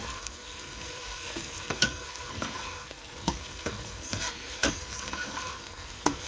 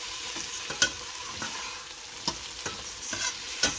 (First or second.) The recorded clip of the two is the second